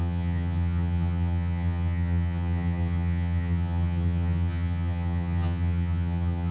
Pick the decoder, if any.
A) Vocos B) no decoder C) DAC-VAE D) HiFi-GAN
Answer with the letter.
D